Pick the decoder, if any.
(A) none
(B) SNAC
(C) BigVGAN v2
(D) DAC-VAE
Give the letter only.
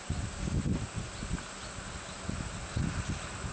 A